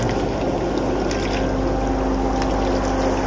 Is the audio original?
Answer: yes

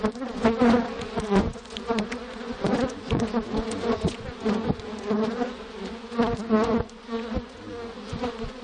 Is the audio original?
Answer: no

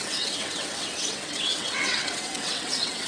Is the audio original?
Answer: no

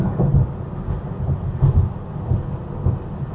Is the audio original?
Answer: yes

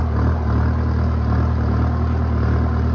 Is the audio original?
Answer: yes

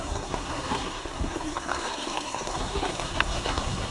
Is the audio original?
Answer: no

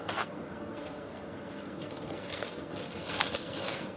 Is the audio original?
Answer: no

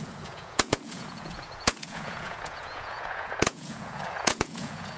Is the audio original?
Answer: no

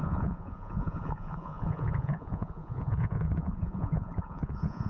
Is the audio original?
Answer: no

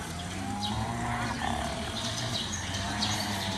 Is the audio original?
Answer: no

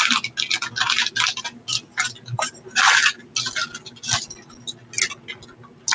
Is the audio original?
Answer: yes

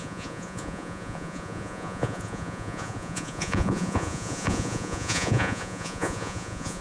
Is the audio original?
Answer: no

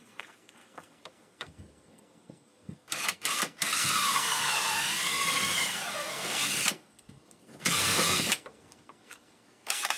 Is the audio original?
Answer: no